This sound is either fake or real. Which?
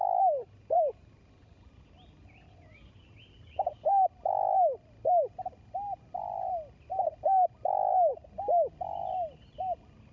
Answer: real